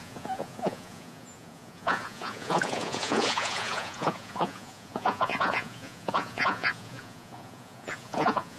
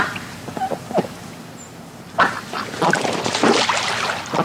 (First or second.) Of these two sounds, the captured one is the second